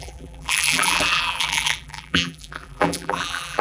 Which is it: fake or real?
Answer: fake